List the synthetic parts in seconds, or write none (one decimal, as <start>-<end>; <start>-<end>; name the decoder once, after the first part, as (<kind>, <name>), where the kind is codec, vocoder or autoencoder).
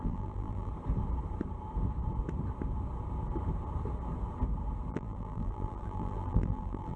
0.0-0.7 (vocoder, BigVGAN v2); 4.9-7.0